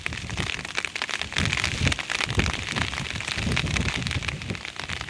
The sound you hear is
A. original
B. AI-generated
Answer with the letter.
A